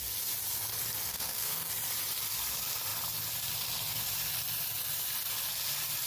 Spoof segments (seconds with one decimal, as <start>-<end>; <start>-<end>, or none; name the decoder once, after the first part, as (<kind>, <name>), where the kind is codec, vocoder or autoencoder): 1.1-1.7 (codec, SNAC)